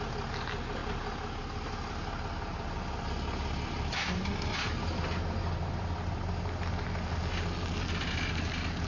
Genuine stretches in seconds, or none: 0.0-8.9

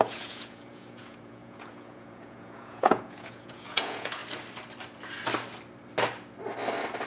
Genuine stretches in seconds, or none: 4.2-7.1

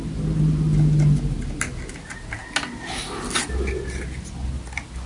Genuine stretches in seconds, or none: 0.0-5.1

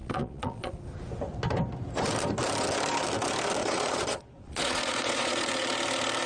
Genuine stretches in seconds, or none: 0.7-3.6; 5.5-6.3

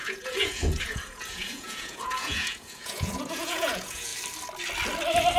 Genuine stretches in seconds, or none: 4.1-5.4

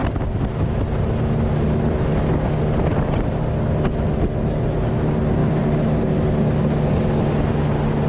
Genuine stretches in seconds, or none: 0.0-8.1